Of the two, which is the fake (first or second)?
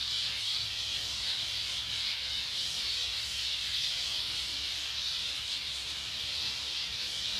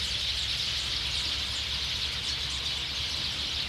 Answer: first